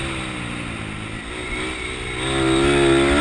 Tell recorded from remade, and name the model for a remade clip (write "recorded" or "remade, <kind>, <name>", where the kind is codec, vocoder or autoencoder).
recorded